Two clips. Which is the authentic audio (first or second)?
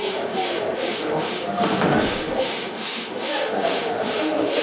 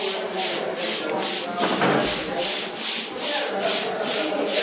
second